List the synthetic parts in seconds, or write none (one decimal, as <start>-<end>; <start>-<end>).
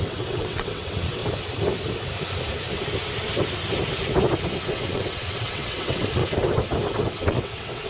0.0-1.2; 4.7-6.2; 7.1-7.9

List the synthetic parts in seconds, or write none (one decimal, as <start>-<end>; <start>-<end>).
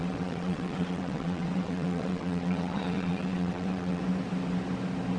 0.0-4.0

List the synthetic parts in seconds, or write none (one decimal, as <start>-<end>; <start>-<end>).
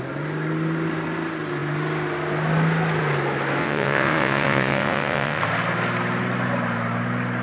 3.6-5.4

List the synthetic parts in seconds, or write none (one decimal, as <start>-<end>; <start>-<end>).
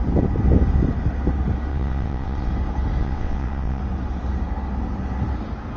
1.7-2.5; 3.0-3.8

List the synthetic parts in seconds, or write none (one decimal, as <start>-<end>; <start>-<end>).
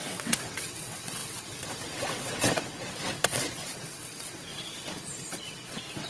0.0-4.5; 5.3-6.1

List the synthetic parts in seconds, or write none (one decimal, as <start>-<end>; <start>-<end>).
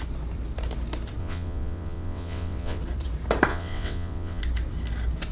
1.2-2.8; 3.5-4.4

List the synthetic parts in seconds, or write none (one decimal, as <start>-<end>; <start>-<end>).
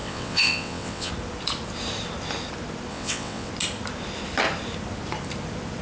0.0-1.1; 2.9-3.5